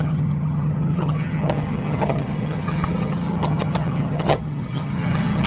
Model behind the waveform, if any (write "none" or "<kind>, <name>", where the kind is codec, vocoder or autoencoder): vocoder, HiFi-GAN